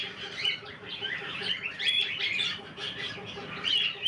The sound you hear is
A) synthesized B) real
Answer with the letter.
B